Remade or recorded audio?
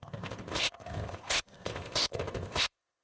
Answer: remade